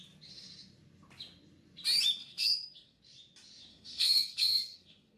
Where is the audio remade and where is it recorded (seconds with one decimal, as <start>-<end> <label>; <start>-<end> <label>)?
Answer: 0.0-2.2 recorded; 2.2-3.0 remade; 3.0-3.7 recorded; 3.7-5.2 remade